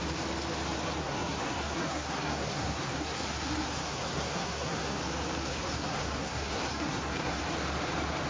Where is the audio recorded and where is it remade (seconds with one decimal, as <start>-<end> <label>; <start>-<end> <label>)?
0.0-1.0 recorded; 1.0-5.0 remade; 5.0-5.5 recorded; 5.5-7.4 remade; 7.4-8.3 recorded